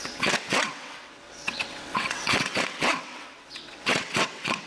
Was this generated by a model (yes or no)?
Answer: yes